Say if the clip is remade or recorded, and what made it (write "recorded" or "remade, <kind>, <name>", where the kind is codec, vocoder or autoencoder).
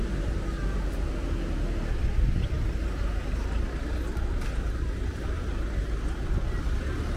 recorded